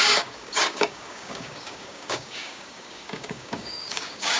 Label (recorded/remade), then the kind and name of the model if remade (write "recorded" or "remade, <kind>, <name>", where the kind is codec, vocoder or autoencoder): remade, codec, DAC